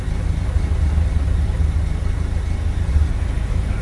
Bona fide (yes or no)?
yes